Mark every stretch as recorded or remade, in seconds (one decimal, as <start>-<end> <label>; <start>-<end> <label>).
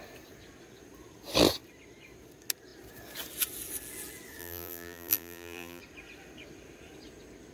0.0-4.4 recorded; 4.4-5.8 remade; 5.8-7.5 recorded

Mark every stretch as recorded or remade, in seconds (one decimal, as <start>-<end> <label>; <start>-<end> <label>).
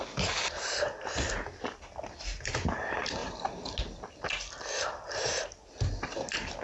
0.0-6.6 recorded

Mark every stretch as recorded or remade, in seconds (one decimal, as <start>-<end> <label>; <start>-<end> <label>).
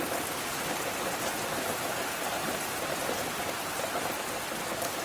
0.0-2.4 recorded; 2.4-3.4 remade; 3.4-5.0 recorded